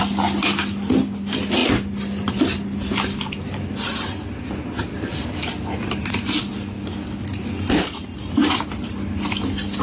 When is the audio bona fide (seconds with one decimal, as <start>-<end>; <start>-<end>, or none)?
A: 0.0-9.8